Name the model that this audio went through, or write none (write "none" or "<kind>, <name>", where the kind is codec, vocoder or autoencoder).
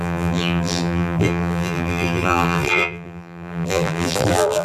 vocoder, BigVGAN v2